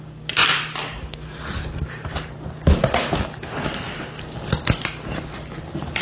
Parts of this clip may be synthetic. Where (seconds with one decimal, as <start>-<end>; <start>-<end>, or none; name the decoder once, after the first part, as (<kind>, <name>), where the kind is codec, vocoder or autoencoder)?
0.4-4.0 (vocoder, BigVGAN v2)